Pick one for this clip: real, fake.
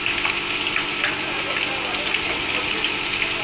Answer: real